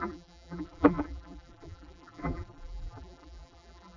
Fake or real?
fake